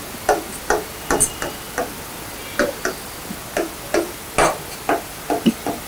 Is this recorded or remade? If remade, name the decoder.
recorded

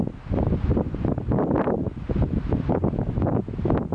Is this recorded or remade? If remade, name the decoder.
recorded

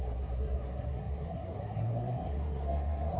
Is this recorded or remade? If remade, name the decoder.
remade, codec, SNAC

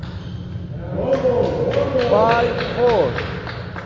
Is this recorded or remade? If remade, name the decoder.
recorded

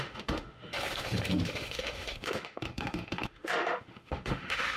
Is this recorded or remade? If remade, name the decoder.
remade, autoencoder, DAC-VAE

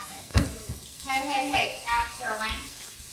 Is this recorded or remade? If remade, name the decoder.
remade, codec, SNAC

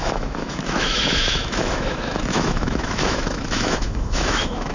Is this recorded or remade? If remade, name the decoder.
remade, autoencoder, DAC-VAE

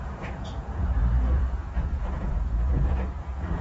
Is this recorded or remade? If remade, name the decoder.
remade, vocoder, Vocos